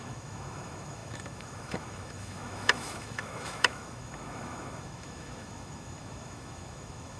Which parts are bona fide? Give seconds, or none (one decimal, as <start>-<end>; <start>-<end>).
none